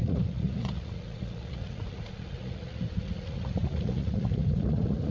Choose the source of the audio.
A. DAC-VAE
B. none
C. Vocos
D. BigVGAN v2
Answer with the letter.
C